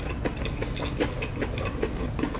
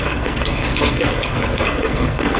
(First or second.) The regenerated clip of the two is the second